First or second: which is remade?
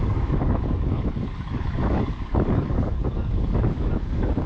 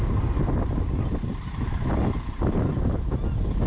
first